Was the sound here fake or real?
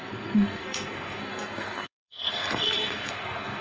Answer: fake